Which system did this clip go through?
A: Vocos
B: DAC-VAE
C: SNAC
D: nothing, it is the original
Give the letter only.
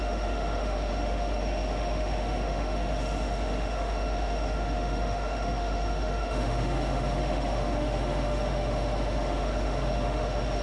B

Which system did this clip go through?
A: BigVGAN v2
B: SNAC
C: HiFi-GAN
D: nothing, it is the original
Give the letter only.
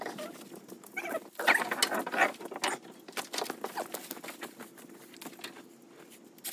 D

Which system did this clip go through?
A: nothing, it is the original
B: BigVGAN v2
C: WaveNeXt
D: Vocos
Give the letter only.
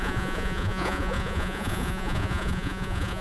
D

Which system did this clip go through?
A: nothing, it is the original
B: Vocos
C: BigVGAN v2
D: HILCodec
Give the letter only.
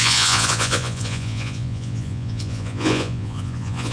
B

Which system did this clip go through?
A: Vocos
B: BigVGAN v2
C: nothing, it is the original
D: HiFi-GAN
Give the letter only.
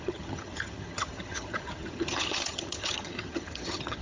D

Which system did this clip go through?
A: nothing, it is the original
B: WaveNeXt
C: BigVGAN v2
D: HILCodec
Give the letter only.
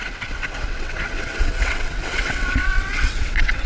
B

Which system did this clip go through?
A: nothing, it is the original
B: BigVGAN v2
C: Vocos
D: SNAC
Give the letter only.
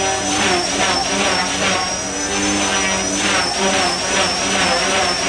A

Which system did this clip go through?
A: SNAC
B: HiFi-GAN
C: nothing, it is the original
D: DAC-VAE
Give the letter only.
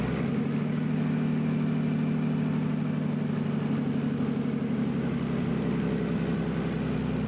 C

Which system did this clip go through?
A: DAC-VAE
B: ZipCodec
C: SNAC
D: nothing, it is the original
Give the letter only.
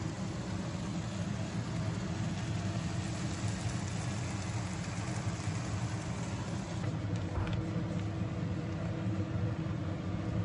D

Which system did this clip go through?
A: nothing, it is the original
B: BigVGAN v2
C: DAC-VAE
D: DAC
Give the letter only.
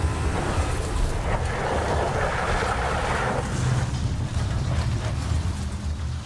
A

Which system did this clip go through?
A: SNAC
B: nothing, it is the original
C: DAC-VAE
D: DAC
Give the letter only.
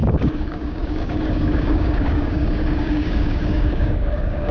D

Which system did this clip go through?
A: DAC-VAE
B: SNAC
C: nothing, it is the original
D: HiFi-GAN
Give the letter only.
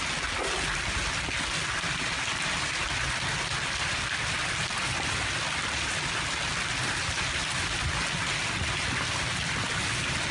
C